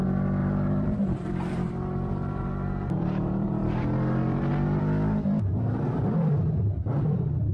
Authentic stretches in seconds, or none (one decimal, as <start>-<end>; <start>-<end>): 0.0-0.4; 4.8-7.5